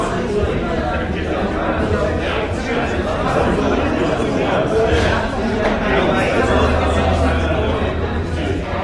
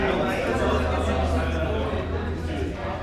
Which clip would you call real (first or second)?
second